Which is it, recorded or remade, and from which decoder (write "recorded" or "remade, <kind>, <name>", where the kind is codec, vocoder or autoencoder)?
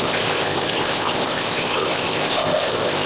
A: remade, codec, ZipCodec